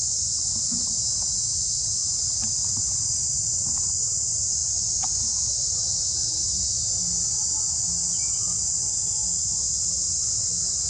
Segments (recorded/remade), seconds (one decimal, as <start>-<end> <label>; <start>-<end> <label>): 0.0-2.0 recorded; 2.0-3.9 remade; 3.9-10.9 recorded

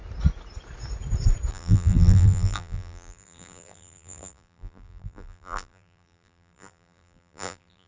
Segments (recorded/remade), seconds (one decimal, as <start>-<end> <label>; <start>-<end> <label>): 0.0-1.5 recorded; 1.5-7.9 remade

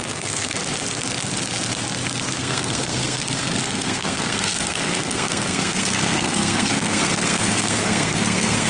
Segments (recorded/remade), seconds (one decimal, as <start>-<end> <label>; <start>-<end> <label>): 0.0-0.6 remade; 0.6-2.3 recorded; 2.3-8.7 remade